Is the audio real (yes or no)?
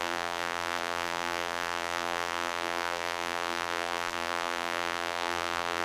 no